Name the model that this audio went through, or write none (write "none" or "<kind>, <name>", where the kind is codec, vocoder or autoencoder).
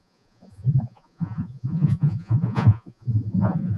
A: vocoder, Vocos